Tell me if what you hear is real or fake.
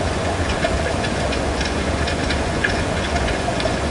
fake